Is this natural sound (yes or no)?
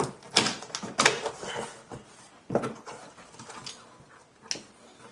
yes